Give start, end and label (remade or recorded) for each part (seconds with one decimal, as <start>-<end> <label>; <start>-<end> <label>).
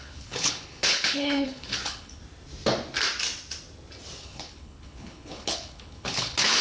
0.0-2.2 remade; 2.2-4.2 recorded; 4.2-6.6 remade